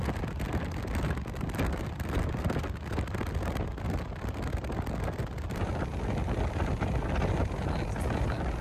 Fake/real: real